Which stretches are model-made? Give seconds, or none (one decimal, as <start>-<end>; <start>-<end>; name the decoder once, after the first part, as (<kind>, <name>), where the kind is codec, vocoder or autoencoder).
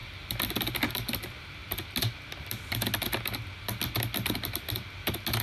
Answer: none